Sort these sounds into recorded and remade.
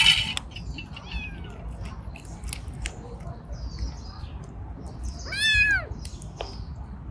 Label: recorded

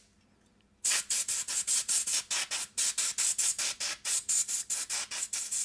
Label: recorded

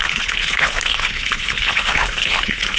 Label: remade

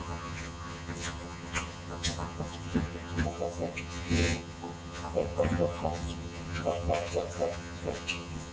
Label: remade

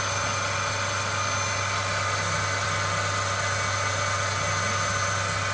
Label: recorded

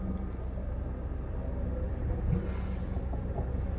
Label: recorded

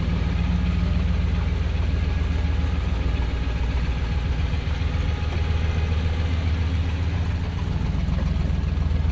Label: recorded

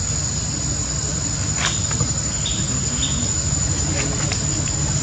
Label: recorded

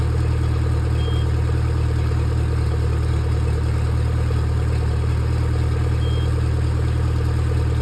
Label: recorded